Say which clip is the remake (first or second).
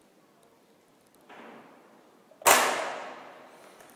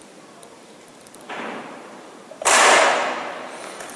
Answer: second